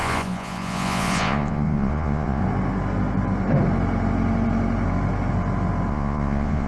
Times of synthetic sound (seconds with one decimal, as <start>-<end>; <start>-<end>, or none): 0.0-2.4; 5.9-6.7